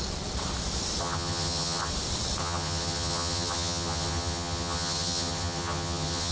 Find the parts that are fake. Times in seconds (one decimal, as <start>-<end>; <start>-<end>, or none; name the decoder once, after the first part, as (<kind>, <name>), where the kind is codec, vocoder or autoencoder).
1.0-1.9 (vocoder, HiFi-GAN); 2.4-6.3